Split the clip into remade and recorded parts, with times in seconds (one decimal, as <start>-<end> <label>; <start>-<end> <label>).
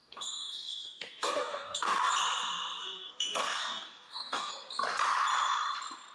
0.0-2.1 remade; 2.1-2.8 recorded; 2.8-4.5 remade; 4.5-6.1 recorded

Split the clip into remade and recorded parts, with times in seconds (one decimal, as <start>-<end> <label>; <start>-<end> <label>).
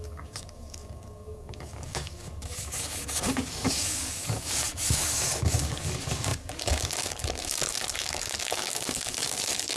0.0-9.8 remade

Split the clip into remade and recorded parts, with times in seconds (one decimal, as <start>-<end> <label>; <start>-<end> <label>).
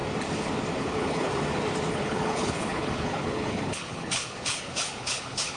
0.0-0.8 recorded; 0.8-1.3 remade; 1.3-1.9 recorded; 1.9-5.6 remade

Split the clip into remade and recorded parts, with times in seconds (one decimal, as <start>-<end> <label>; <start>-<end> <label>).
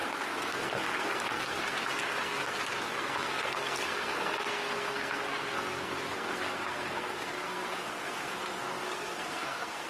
0.0-9.9 remade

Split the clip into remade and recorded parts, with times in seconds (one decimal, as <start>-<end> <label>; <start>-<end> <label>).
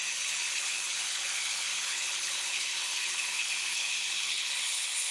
0.0-5.1 remade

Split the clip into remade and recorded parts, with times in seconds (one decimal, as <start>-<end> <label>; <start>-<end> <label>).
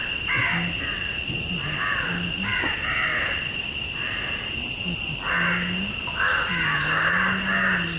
0.0-8.0 recorded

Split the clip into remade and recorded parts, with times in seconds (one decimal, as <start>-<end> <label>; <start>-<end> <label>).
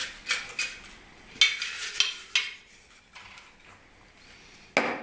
0.0-5.0 recorded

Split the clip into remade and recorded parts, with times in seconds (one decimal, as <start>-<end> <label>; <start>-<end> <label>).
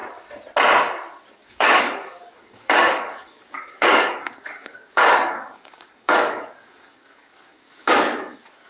0.0-1.3 recorded; 1.3-8.7 remade